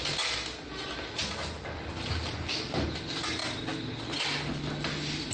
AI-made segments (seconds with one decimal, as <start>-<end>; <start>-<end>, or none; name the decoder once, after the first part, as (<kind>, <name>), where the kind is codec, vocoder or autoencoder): none